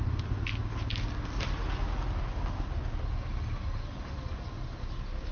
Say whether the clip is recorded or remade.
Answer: recorded